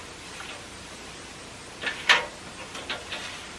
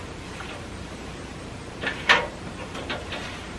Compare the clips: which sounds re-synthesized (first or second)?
second